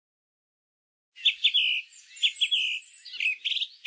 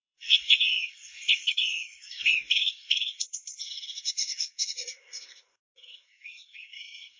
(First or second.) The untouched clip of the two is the first